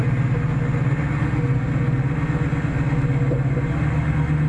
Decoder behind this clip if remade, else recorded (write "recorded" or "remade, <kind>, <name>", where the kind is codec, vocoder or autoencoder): recorded